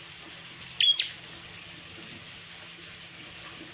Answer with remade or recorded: recorded